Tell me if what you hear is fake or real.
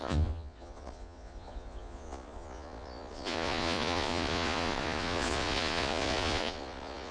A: fake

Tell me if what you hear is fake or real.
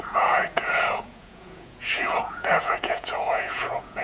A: fake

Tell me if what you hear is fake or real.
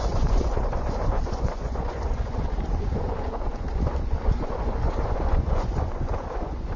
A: fake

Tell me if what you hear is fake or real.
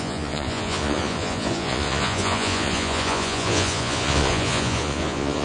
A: fake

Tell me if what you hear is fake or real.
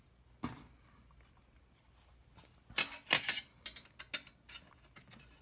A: real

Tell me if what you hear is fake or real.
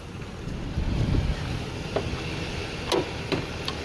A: real